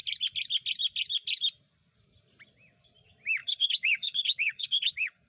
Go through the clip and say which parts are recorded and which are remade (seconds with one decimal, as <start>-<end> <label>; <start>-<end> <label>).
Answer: 0.0-3.4 recorded; 3.4-5.3 remade